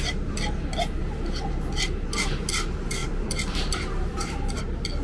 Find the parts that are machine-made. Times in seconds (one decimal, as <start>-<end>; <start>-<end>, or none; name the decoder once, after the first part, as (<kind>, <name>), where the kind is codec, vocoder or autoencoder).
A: 3.0-4.6 (vocoder, BigVGAN v2)